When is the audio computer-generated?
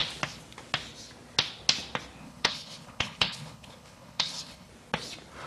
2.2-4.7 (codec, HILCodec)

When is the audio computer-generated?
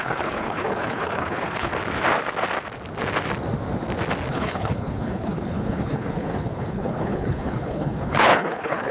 0.0-1.7 (codec, HILCodec); 4.3-8.9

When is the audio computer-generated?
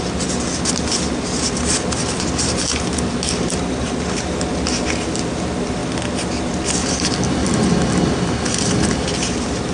none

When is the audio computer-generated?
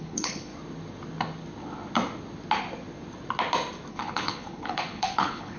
0.0-0.5 (codec, HILCodec); 3.9-5.6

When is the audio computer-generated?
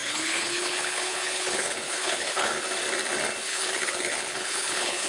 0.0-2.5 (codec, HILCodec); 3.5-5.1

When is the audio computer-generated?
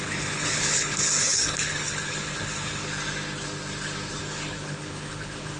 0.0-2.8 (codec, HILCodec); 4.2-5.6